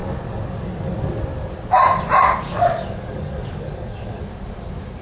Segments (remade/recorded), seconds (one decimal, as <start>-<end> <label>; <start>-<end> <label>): 0.0-1.1 remade; 1.1-2.2 recorded; 2.2-4.2 remade; 4.2-5.0 recorded